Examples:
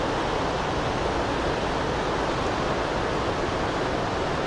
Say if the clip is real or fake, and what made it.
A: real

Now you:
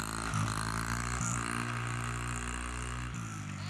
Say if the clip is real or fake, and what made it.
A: real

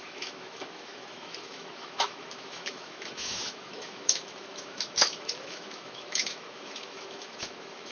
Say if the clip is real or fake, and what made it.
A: fake, autoencoder, DAC-VAE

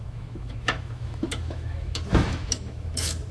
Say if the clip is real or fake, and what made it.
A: fake, autoencoder, DAC-VAE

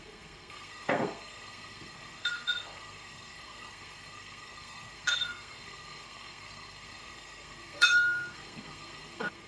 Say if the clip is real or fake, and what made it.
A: fake, codec, SNAC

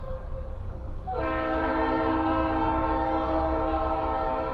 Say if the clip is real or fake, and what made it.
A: fake, codec, DAC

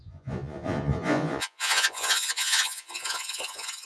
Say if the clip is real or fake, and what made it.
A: fake, vocoder, Vocos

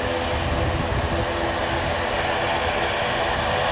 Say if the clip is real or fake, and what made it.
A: real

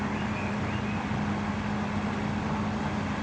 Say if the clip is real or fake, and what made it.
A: real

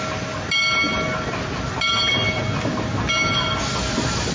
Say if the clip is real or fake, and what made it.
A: real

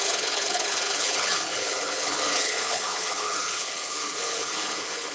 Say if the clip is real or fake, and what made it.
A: fake, codec, HILCodec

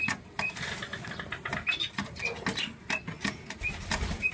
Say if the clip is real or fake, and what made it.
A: real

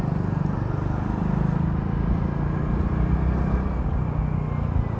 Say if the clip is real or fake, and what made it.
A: real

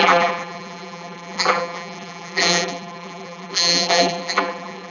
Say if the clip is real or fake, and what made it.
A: fake, vocoder, BigVGAN v2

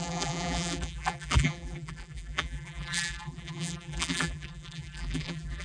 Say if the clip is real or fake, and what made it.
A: fake, vocoder, BigVGAN v2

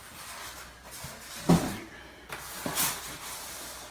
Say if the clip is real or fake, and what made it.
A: real